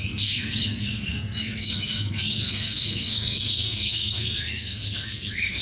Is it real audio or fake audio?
fake